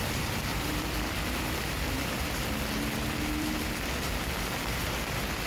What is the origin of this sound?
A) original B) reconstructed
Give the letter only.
B